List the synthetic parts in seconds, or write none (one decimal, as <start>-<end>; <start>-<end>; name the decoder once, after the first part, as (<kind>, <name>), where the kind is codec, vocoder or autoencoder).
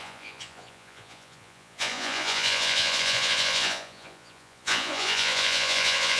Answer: 0.0-6.2 (vocoder, Vocos)